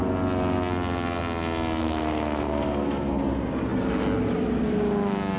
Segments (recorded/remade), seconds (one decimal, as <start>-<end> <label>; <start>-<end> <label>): 0.0-1.8 recorded; 1.8-3.2 remade; 3.2-5.4 recorded